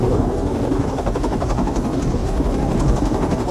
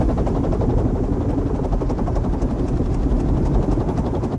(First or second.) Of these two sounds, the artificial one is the first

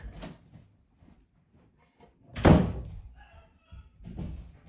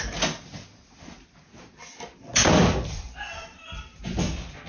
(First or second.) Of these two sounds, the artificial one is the first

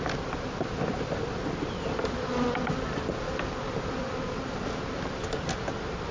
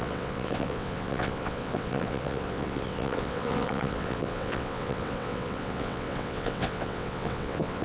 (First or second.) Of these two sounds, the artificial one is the second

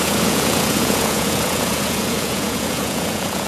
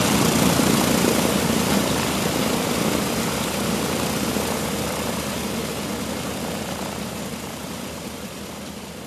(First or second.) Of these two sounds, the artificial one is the first